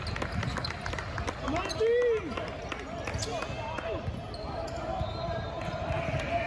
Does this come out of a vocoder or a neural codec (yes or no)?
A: no